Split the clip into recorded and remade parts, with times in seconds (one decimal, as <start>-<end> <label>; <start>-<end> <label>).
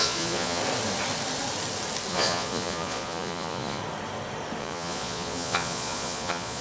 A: 0.0-0.6 remade; 0.6-2.1 recorded; 2.1-3.8 remade; 3.8-4.6 recorded; 4.6-6.6 remade